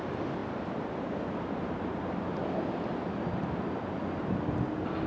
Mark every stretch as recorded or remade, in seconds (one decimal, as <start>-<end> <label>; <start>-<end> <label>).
0.0-5.1 recorded

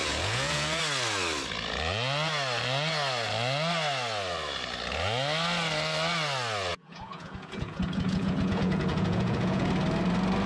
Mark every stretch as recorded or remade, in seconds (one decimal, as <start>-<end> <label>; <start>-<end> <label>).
0.0-0.8 remade; 0.8-6.7 recorded; 6.7-9.7 remade; 9.7-10.5 recorded

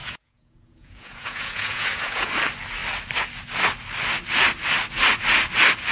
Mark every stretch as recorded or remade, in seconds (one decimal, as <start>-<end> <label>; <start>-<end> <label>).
0.0-2.3 remade; 2.3-5.9 recorded

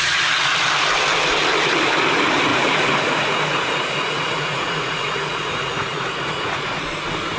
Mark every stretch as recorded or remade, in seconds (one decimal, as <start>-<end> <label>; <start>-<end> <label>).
0.0-2.5 recorded; 2.5-6.9 remade; 6.9-7.4 recorded